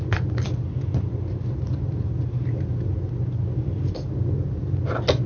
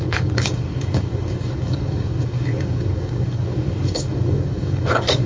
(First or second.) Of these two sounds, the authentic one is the first